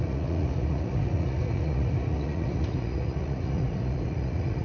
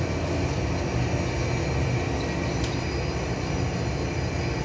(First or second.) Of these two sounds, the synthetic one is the first